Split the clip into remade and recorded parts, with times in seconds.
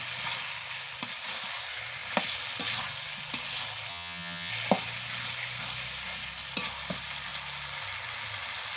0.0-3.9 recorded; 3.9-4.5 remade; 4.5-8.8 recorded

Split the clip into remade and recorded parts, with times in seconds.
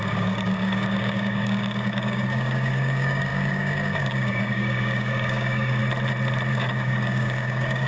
0.0-5.8 remade; 5.8-6.5 recorded; 6.5-7.9 remade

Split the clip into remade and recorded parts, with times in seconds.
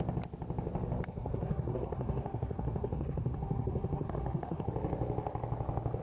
0.0-1.1 recorded; 1.1-4.7 remade; 4.7-6.0 recorded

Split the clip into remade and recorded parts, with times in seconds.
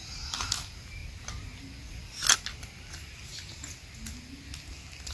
0.0-5.1 recorded